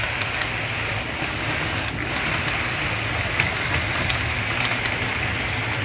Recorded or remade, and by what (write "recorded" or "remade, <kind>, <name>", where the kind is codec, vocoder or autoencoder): recorded